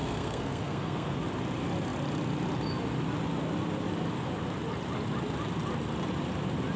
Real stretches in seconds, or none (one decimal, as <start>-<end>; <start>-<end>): 1.1-6.8